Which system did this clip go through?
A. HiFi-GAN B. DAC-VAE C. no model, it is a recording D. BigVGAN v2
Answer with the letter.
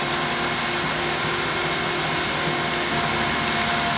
C